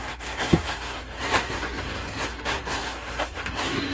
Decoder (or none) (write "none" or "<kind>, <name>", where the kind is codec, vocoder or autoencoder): codec, SNAC